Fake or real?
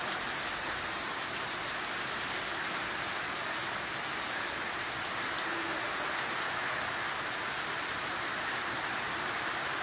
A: fake